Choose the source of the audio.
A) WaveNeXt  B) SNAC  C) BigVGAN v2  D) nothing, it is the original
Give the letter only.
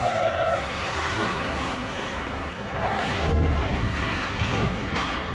B